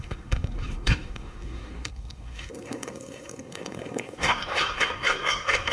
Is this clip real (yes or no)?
no